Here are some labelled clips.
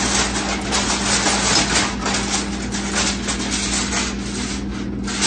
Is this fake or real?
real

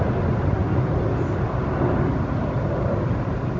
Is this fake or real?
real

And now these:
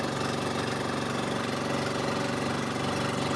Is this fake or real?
real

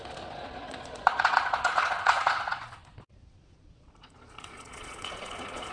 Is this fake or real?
fake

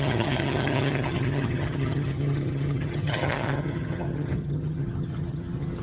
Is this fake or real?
fake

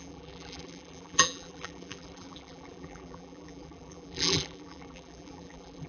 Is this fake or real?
fake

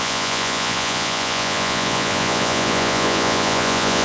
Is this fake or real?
fake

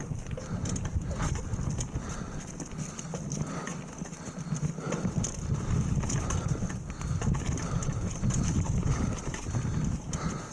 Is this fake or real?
real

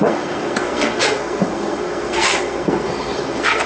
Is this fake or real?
fake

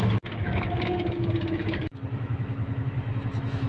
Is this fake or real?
fake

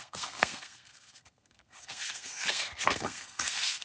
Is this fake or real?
fake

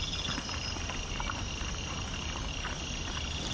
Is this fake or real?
real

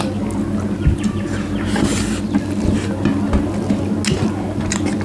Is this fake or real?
real